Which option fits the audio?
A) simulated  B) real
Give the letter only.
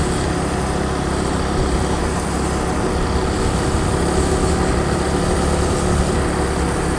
B